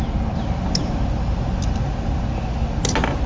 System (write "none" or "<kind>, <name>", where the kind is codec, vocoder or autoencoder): none